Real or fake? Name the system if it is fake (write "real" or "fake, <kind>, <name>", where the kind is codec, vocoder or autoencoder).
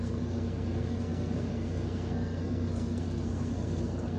fake, codec, SNAC